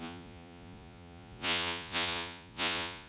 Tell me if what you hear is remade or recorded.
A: remade